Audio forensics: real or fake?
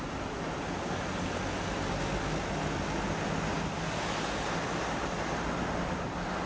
real